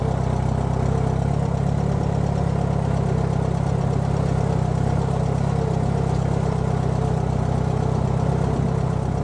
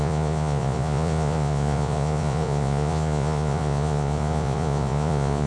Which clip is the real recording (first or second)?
first